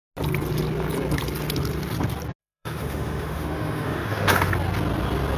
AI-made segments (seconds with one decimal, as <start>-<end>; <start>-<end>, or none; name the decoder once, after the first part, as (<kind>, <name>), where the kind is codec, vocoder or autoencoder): 2.4-4.5 (autoencoder, DAC-VAE)